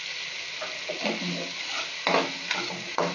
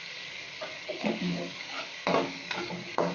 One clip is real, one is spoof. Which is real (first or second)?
first